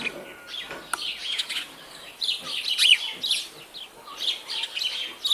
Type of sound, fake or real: real